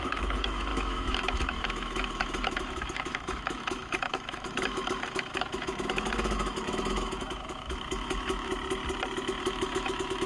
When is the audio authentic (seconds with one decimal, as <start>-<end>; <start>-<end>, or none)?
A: 8.5-9.4